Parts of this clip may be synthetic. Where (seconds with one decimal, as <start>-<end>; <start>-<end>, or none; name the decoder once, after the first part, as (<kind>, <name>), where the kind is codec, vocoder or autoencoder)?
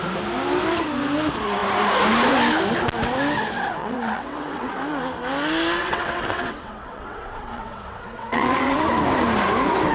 3.8-4.7 (vocoder, WaveNeXt); 5.8-8.8